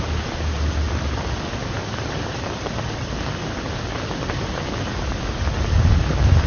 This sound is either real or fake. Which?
real